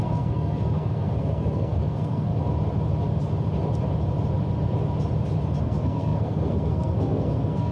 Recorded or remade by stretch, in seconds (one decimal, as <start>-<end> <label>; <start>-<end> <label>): 0.0-2.3 remade; 2.3-5.6 recorded; 5.6-7.7 remade

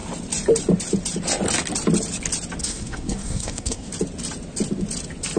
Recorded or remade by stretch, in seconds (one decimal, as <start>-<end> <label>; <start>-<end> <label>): 0.0-2.6 recorded; 2.6-3.9 remade; 3.9-5.4 recorded